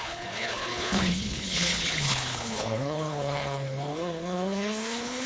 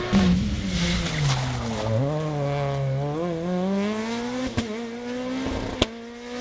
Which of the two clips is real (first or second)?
second